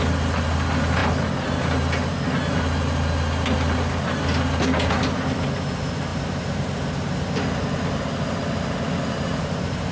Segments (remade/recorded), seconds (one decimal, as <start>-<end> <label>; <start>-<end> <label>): 0.0-9.9 recorded